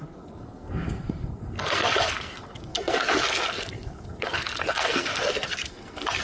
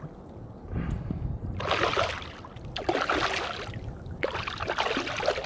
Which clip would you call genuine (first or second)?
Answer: second